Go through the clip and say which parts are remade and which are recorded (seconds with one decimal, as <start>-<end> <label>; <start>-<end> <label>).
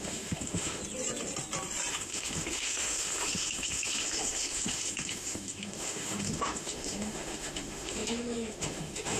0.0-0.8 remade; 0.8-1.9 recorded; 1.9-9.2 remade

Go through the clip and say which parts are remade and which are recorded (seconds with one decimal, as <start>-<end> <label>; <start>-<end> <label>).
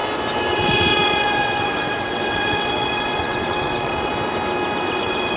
0.0-0.5 recorded; 0.5-4.1 remade; 4.1-4.9 recorded; 4.9-5.4 remade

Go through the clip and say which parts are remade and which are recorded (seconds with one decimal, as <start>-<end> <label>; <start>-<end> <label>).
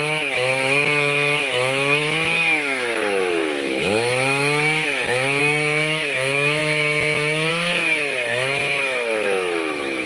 0.0-10.1 remade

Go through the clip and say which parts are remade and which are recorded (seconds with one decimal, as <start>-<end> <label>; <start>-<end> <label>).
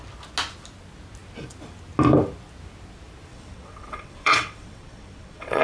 0.0-3.3 recorded; 3.3-5.6 remade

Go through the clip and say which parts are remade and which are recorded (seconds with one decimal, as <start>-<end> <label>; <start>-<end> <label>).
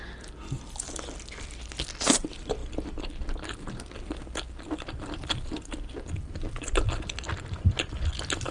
0.0-8.5 recorded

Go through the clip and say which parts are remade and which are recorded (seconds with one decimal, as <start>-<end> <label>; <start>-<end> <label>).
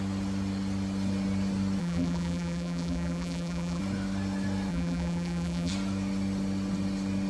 0.0-1.8 recorded; 1.8-3.8 remade; 3.8-4.7 recorded; 4.7-5.7 remade; 5.7-7.3 recorded